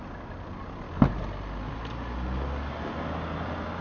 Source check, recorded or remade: recorded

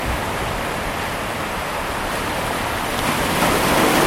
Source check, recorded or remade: recorded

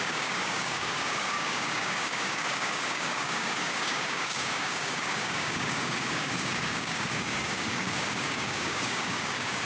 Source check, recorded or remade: remade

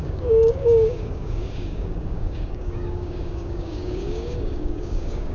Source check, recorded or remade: remade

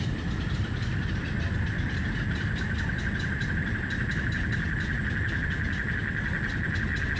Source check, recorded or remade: recorded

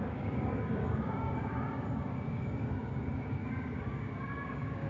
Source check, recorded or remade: remade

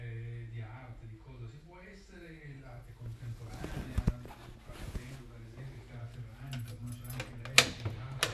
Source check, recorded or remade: recorded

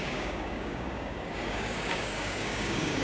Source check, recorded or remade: remade